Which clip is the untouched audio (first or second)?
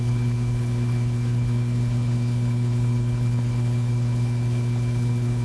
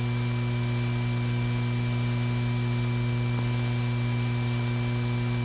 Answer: second